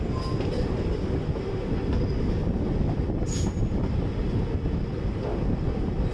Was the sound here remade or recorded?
recorded